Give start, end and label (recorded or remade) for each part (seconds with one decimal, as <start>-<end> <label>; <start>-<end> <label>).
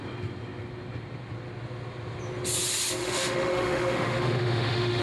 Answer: 0.0-3.0 recorded; 3.0-5.0 remade